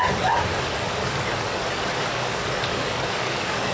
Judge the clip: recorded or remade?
remade